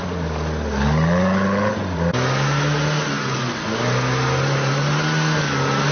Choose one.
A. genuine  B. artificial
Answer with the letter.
A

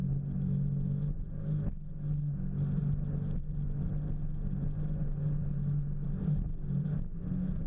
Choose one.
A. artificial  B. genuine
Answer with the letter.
B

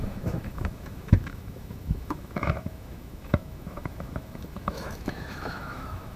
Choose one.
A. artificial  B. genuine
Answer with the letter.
A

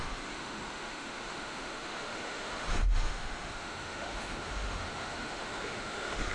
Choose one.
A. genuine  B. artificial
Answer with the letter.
B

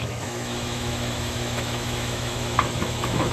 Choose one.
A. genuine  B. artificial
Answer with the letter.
B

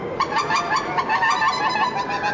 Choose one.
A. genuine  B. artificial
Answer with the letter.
A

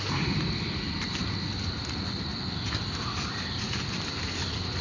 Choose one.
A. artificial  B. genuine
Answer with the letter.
B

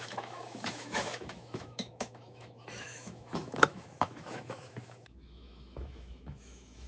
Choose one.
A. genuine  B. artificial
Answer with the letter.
B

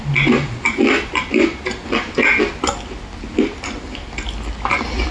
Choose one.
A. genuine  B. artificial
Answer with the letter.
A